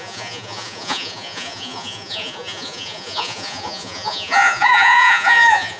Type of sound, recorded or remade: remade